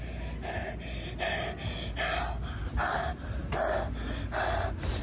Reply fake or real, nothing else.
real